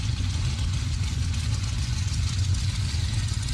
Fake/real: fake